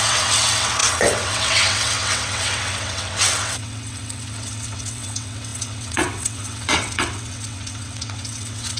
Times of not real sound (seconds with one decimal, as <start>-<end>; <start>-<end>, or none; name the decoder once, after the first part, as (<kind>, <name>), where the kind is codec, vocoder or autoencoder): 0.0-8.8 (vocoder, WaveNeXt)